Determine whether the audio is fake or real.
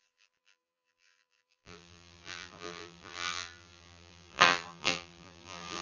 fake